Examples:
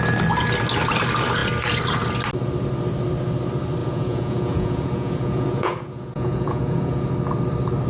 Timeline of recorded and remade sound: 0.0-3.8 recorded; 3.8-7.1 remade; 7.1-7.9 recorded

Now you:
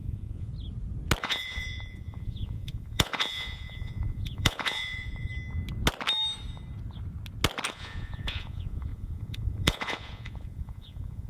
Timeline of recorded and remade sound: 0.0-0.5 remade; 0.5-1.2 recorded; 1.2-5.3 remade; 5.3-7.7 recorded; 7.7-11.3 remade

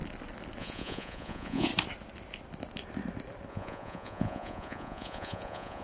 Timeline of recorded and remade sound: 0.0-0.6 recorded; 0.6-1.7 remade; 1.7-3.5 recorded; 3.5-5.8 remade

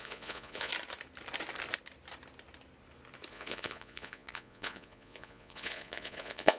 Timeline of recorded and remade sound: 0.0-0.7 remade; 0.7-3.3 recorded; 3.3-6.6 remade

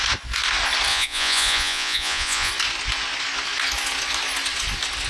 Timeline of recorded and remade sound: 0.0-0.9 recorded; 0.9-2.5 remade; 2.5-5.1 recorded